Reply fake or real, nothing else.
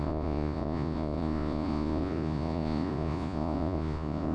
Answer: fake